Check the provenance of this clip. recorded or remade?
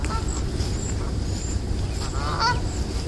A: recorded